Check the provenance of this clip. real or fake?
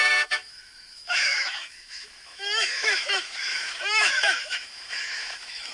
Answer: fake